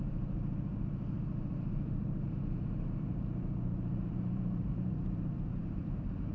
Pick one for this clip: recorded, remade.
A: remade